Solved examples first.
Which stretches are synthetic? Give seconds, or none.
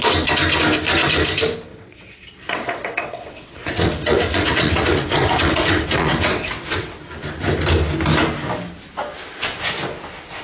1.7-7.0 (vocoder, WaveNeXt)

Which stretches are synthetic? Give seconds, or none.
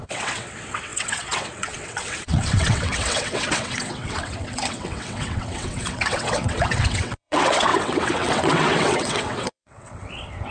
0.0-10.5 (vocoder, WaveNeXt)